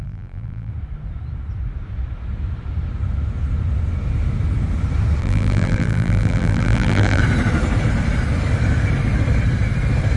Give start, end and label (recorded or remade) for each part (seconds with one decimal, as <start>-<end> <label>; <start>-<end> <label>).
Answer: 0.0-0.7 remade; 0.7-5.2 recorded; 5.2-7.2 remade; 7.2-10.2 recorded